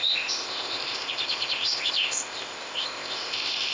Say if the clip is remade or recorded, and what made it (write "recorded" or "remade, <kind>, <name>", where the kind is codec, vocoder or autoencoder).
remade, codec, ZipCodec